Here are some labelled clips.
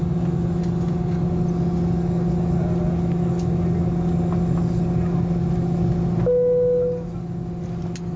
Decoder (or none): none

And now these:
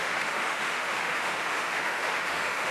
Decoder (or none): autoencoder, DAC-VAE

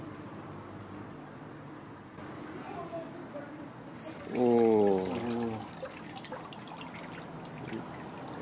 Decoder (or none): none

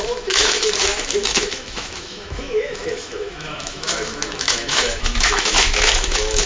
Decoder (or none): autoencoder, DAC-VAE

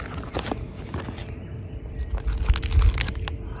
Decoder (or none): none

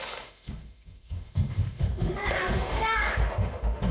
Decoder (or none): autoencoder, DAC-VAE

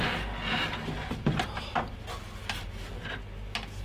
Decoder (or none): none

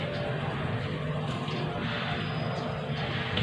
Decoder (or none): none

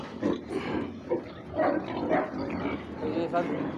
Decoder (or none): none